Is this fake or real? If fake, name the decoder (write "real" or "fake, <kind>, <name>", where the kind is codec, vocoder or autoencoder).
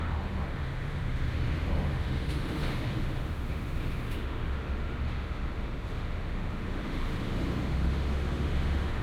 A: fake, autoencoder, DAC-VAE